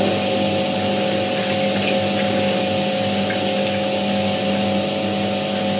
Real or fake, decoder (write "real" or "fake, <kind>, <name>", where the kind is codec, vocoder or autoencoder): real